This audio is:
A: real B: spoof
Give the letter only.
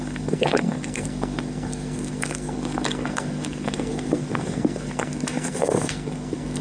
B